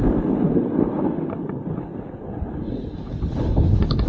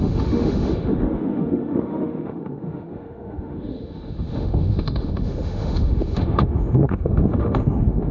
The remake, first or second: second